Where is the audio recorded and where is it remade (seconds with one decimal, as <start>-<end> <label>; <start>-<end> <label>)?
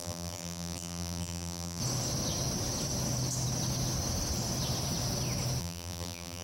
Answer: 0.0-1.8 remade; 1.8-5.6 recorded; 5.6-6.4 remade